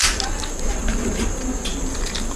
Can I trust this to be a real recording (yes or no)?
yes